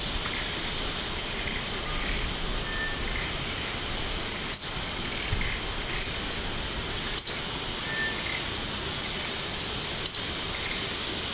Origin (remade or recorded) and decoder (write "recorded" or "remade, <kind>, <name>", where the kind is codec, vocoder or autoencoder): recorded